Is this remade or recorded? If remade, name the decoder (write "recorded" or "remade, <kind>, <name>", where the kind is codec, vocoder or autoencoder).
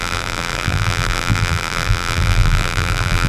remade, vocoder, BigVGAN v2